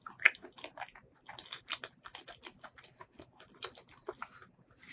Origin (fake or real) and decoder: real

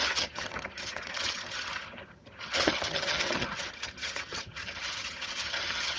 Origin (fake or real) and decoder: fake, vocoder, HiFi-GAN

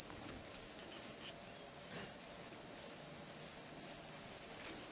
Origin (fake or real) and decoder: real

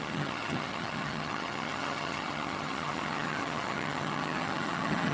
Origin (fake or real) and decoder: fake, vocoder, HiFi-GAN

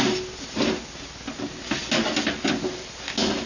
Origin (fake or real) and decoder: real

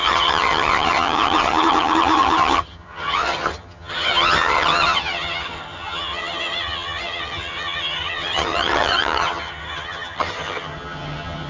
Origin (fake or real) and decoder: fake, vocoder, HiFi-GAN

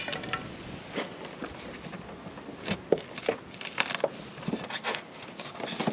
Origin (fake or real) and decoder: real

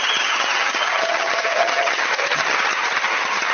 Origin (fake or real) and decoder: fake, vocoder, HiFi-GAN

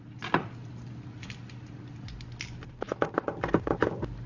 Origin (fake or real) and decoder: real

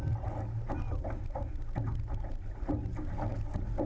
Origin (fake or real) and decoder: real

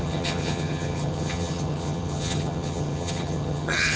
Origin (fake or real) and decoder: fake, vocoder, HiFi-GAN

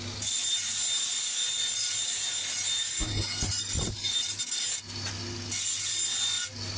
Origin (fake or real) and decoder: real